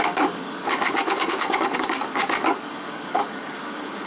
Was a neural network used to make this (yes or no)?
yes